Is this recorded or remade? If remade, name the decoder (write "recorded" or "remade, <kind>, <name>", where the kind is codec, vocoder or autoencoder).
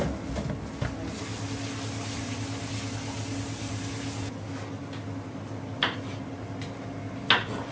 recorded